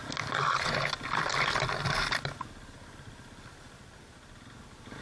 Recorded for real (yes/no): yes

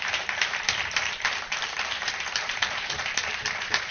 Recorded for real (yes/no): no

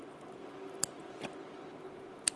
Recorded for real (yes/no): yes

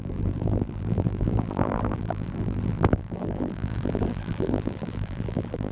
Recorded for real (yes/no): no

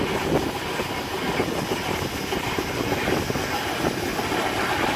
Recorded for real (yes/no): yes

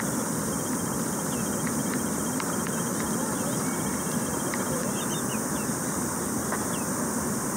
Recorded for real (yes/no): yes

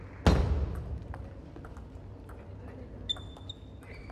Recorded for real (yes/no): yes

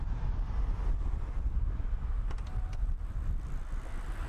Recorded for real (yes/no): yes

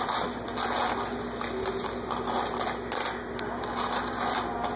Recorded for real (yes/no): yes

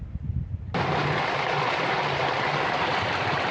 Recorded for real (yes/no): no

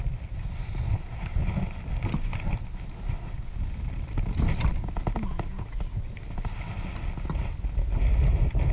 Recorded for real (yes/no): yes